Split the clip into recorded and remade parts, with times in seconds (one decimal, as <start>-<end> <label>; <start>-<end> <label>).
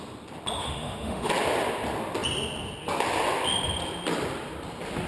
0.0-0.6 recorded; 0.6-1.3 remade; 1.3-5.1 recorded